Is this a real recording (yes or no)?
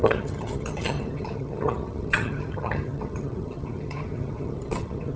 no